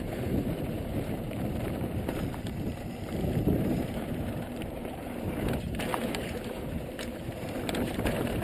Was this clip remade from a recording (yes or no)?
yes